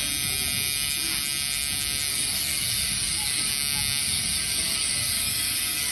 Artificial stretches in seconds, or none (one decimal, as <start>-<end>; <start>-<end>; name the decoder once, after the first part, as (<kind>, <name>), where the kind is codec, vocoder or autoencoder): 2.1-3.5 (codec, DAC); 4.0-5.9